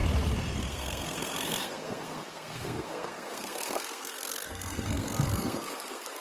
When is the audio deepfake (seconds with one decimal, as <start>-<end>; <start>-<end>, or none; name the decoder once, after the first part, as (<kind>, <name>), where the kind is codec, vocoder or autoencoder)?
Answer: 0.6-6.2 (codec, SNAC)